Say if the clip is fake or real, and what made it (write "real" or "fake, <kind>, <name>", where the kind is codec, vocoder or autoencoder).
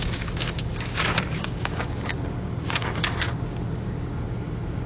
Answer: fake, codec, DAC